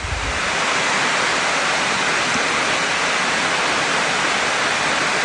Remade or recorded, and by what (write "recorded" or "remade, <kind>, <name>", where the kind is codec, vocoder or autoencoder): recorded